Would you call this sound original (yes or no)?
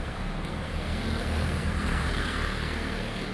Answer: no